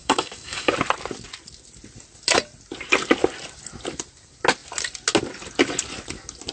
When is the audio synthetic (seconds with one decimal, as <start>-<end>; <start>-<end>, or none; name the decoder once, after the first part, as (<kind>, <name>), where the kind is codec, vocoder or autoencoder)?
0.0-0.7 (codec, DAC)